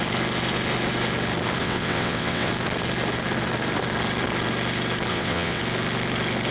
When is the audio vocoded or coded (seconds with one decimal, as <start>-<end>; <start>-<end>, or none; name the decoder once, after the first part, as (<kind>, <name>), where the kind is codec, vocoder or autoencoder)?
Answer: 1.6-2.5 (vocoder, WaveNeXt); 5.1-5.6